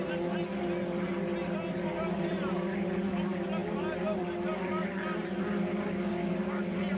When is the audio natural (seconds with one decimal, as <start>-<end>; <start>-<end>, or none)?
0.0-7.0